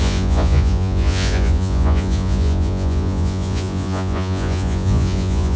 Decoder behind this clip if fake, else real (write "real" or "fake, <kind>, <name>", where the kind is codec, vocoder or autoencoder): fake, vocoder, Vocos